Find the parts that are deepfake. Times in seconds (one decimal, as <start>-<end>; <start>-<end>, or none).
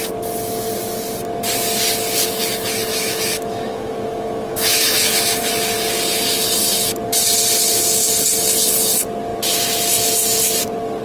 2.9-5.5